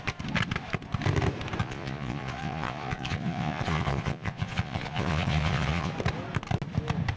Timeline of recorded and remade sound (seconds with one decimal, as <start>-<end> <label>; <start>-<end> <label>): 0.0-1.6 recorded; 1.6-5.9 remade; 5.9-7.2 recorded